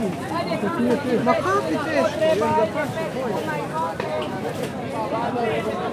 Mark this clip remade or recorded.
recorded